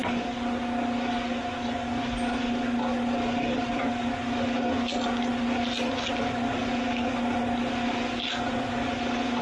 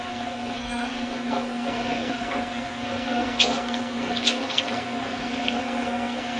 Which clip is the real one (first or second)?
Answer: first